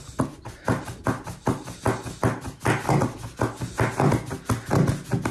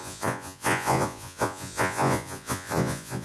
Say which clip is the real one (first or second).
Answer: first